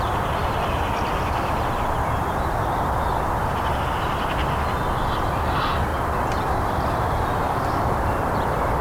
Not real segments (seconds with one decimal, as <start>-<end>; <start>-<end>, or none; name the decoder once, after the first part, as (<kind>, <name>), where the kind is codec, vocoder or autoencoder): 5.9-8.8 (vocoder, BigVGAN v2)